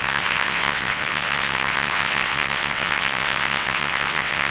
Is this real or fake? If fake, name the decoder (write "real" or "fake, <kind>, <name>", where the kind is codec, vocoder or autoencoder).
fake, vocoder, WaveNeXt